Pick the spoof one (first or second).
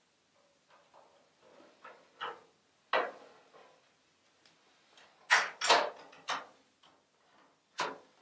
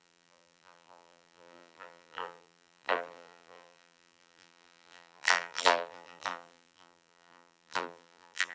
second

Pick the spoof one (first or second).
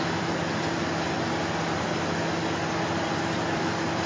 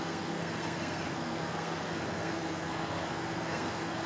second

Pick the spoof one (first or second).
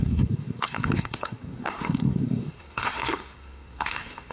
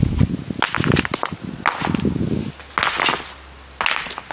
first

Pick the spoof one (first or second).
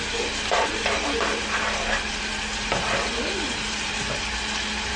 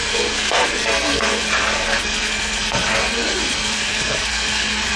second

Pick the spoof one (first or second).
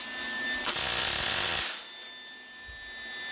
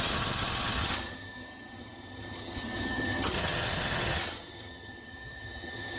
second